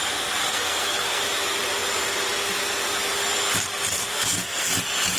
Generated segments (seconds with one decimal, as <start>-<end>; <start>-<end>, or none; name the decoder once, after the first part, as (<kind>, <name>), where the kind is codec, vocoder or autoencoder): 0.4-1.2 (codec, SNAC); 3.9-4.7